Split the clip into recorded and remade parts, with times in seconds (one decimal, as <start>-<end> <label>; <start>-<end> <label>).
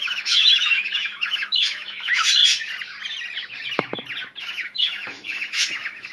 0.0-2.4 remade; 2.4-4.4 recorded; 4.4-6.1 remade